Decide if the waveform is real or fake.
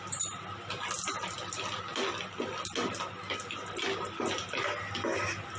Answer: real